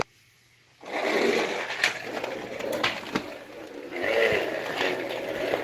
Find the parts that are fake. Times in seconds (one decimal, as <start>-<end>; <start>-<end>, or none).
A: none